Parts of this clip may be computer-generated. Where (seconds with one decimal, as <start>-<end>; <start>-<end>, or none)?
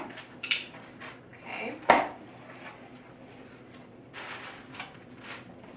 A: 0.0-5.8